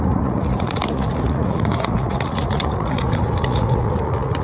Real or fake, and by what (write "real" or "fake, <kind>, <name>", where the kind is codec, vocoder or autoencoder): fake, vocoder, Vocos